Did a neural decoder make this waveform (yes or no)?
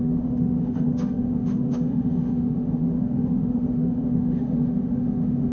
yes